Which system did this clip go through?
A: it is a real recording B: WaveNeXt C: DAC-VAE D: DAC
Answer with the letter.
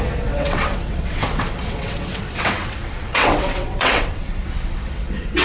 B